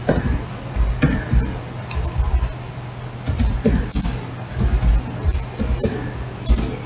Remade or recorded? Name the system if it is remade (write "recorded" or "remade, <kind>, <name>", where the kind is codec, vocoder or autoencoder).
recorded